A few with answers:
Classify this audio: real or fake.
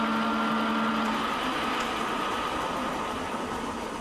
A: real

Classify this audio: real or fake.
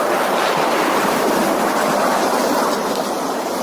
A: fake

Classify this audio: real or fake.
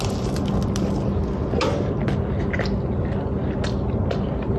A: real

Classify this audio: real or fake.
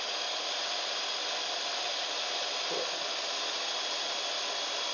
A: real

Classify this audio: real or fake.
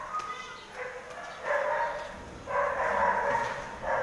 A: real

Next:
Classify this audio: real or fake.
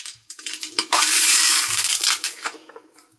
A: fake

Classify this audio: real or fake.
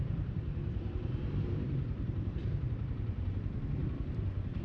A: fake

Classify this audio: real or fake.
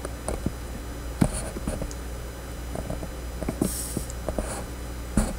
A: real